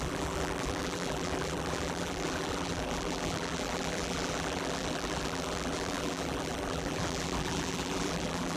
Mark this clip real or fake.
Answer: fake